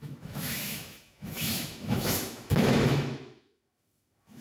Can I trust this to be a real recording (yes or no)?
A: no